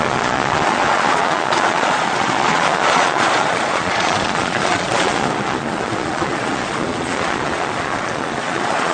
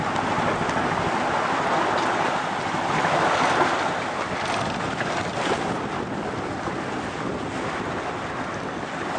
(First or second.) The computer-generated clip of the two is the first